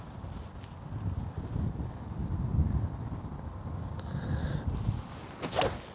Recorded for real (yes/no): yes